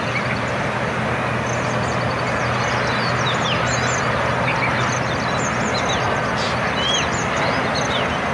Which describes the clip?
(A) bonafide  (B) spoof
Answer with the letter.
A